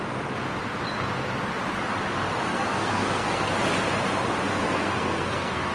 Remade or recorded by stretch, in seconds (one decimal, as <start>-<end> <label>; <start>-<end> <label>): 0.0-2.5 recorded; 2.5-3.5 remade; 3.5-4.5 recorded; 4.5-5.7 remade